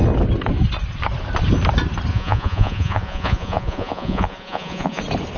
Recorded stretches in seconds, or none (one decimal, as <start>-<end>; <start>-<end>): 0.0-2.1; 5.0-5.4